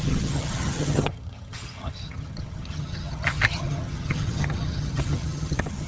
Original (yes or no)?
no